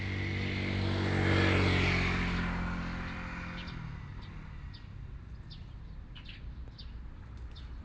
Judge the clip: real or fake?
real